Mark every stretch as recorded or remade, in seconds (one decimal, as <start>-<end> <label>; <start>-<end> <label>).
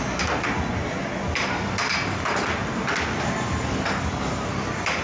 0.0-5.0 recorded